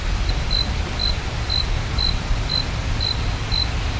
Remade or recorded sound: recorded